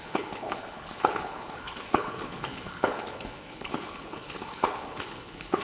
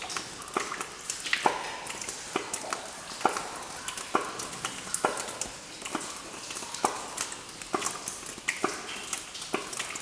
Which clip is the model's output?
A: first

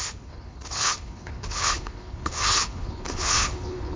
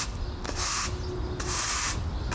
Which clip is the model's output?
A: first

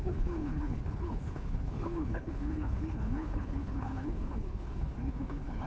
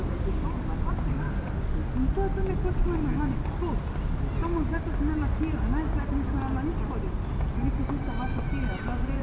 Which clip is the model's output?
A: first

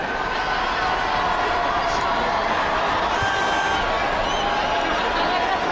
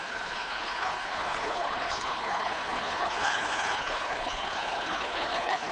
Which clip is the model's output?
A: second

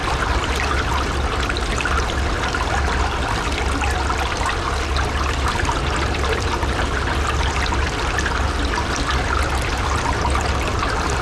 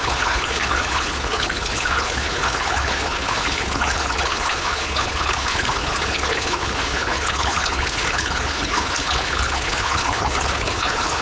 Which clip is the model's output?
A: second